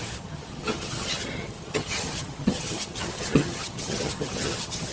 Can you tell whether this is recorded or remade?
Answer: remade